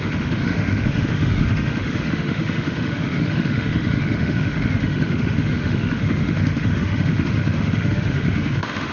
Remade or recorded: remade